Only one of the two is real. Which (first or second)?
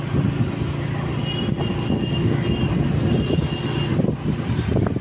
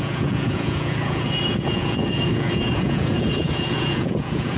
first